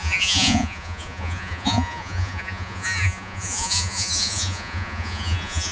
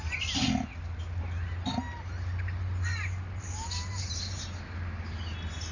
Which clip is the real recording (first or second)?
second